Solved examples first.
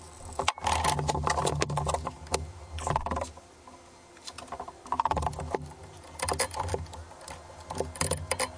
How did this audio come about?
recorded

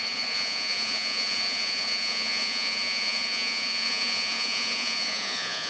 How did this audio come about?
remade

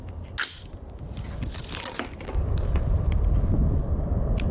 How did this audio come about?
recorded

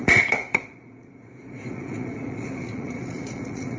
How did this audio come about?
remade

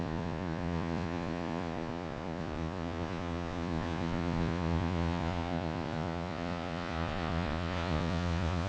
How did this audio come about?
remade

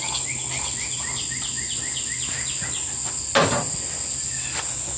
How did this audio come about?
recorded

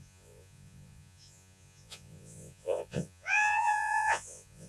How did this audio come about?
remade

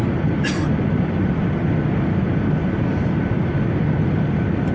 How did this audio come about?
recorded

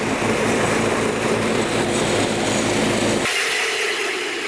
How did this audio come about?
recorded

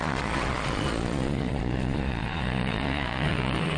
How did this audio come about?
remade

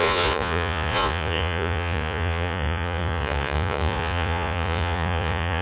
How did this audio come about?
remade